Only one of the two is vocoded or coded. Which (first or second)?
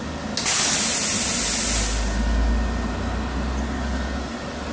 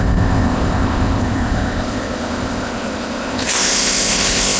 second